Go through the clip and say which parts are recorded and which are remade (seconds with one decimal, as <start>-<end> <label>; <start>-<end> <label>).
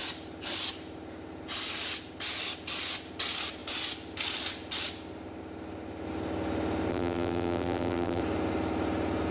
0.0-6.9 recorded; 6.9-8.2 remade; 8.2-9.3 recorded